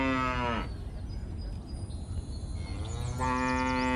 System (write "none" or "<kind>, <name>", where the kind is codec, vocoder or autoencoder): none